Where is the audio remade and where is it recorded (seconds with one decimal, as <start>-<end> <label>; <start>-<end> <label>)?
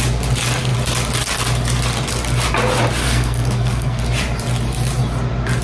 0.0-3.0 recorded; 3.0-4.0 remade; 4.0-5.6 recorded